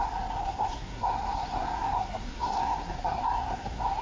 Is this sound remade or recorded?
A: remade